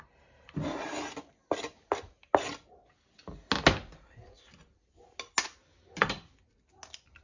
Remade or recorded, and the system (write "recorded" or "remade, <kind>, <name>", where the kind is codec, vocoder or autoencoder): recorded